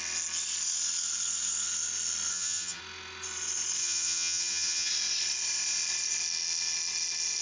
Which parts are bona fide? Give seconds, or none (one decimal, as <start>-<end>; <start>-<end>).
0.0-2.3; 2.8-3.8; 4.9-7.4